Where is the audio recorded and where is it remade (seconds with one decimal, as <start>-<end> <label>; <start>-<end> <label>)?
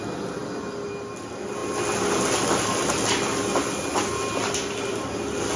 0.0-5.6 recorded